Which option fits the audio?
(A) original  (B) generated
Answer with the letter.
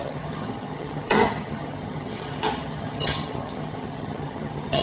B